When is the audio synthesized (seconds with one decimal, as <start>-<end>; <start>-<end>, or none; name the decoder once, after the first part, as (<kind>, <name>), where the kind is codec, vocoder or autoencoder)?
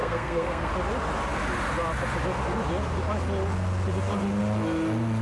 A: 0.0-0.7 (codec, SNAC)